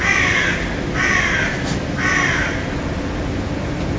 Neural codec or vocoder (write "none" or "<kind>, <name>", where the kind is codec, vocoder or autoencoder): none